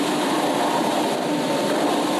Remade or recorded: recorded